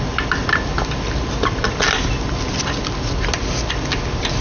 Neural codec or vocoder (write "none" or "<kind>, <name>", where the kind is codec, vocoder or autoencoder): none